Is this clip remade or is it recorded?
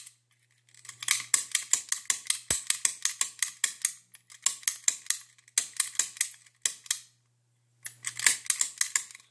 recorded